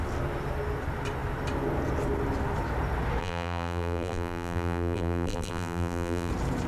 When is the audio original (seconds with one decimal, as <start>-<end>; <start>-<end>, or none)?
0.0-3.2; 6.3-6.7